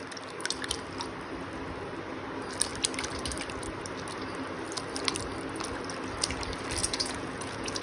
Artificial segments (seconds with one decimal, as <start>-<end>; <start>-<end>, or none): 6.8-7.8